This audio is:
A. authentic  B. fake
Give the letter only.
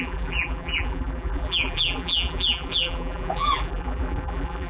B